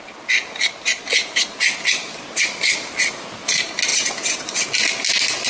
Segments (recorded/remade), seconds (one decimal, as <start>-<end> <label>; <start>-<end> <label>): 0.0-5.5 recorded